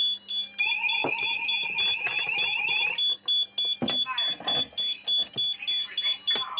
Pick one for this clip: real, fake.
real